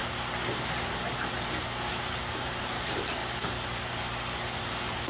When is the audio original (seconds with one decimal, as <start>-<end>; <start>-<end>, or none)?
0.0-1.9; 3.2-4.6

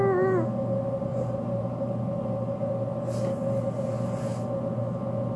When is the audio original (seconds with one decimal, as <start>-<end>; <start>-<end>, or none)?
0.0-1.1; 2.7-5.4